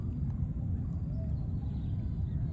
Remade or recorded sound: recorded